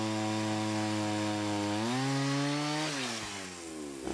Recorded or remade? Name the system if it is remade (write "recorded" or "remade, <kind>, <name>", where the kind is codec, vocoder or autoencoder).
recorded